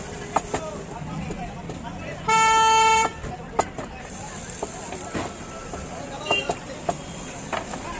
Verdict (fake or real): real